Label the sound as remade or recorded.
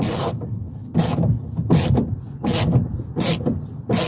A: recorded